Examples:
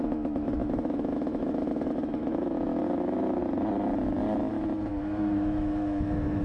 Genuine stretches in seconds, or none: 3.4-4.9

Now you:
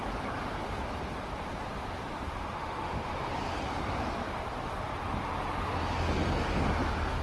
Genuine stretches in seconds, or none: 0.0-2.4; 3.3-7.2